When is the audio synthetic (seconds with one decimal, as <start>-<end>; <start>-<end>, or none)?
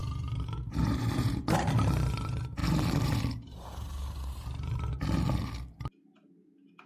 0.0-1.4; 2.6-5.0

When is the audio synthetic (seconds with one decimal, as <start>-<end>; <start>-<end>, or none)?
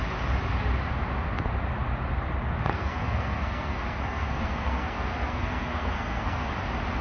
2.7-6.5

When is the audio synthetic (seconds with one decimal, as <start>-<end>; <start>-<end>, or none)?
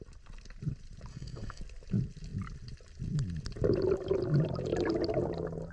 1.1-1.6